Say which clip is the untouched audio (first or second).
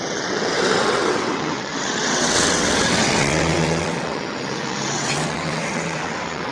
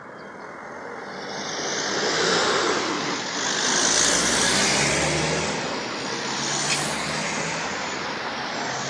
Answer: second